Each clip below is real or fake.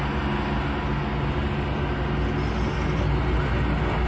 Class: real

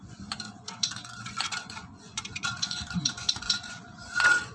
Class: fake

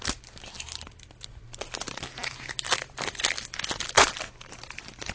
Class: real